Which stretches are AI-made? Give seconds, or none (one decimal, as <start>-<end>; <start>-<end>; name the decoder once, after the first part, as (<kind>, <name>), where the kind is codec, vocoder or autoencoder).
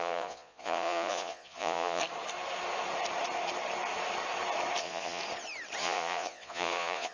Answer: 0.0-2.0 (vocoder, Vocos); 4.8-5.2; 5.8-7.1